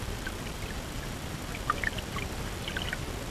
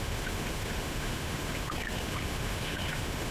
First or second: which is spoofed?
second